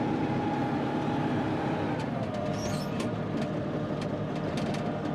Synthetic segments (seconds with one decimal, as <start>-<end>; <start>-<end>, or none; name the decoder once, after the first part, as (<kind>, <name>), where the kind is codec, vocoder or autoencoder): 0.6-3.7 (vocoder, BigVGAN v2)